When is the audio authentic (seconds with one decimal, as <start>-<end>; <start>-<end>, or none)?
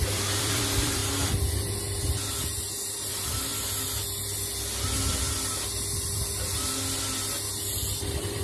1.0-2.9; 3.5-8.0